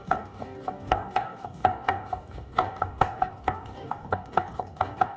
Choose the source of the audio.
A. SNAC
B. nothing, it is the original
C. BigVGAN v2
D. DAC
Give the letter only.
D